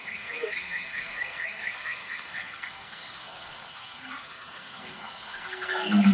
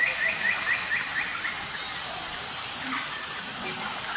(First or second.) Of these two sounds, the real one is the second